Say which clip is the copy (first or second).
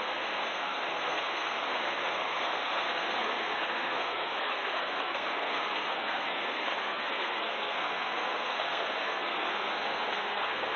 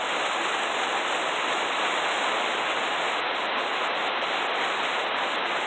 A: first